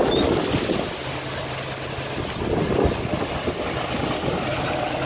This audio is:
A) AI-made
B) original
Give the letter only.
B